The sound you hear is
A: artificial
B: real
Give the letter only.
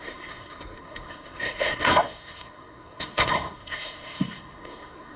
A